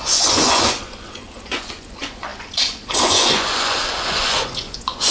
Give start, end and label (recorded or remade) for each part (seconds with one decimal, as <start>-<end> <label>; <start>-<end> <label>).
0.0-5.1 remade